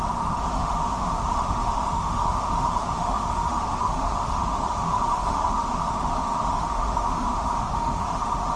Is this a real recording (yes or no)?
no